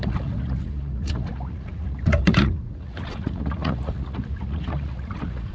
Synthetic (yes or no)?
yes